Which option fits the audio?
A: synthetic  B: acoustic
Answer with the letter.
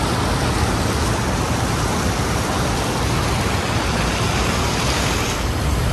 B